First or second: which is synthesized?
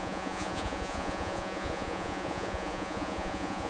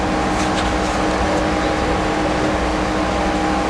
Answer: first